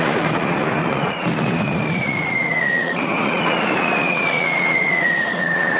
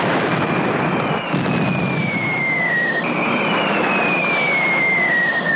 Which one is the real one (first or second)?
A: second